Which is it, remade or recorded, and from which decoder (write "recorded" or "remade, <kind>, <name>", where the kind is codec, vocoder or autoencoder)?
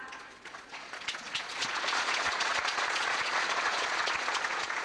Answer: remade, vocoder, Vocos